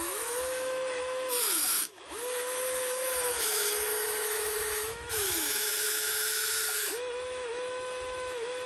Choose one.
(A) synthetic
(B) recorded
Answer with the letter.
A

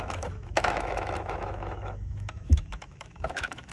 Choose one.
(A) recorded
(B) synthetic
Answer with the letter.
B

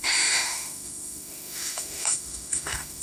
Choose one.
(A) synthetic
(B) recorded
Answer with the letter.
A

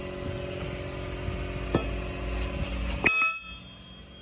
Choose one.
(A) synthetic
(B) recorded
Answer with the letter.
B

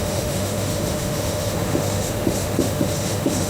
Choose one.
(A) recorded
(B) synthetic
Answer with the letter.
B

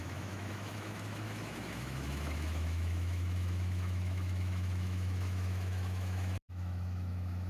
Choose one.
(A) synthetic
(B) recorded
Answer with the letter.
A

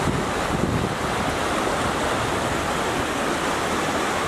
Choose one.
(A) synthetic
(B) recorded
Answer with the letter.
B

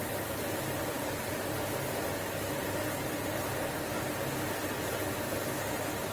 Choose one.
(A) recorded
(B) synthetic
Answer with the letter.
A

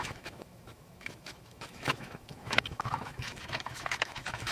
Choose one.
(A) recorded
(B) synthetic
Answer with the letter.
B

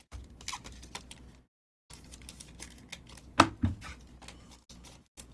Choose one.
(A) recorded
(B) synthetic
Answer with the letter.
A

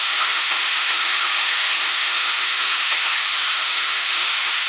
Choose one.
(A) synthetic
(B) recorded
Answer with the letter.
A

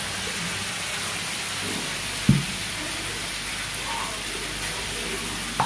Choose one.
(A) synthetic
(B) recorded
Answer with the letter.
B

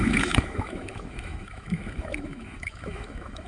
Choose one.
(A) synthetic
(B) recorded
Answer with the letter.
A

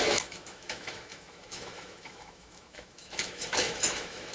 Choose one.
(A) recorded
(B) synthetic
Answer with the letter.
B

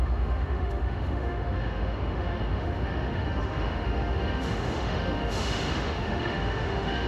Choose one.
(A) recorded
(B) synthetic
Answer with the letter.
B